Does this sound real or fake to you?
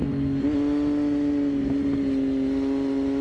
real